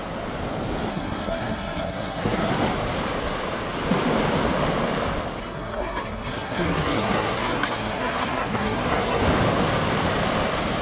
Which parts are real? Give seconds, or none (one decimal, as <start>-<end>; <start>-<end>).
0.0-0.9; 2.5-5.4; 9.2-10.8